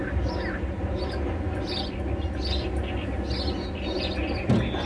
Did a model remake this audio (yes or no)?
no